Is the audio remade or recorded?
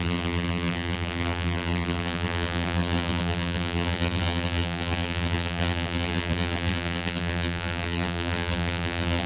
remade